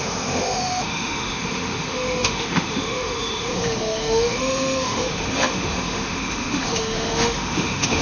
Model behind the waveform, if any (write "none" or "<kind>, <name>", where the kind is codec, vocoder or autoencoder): autoencoder, DAC-VAE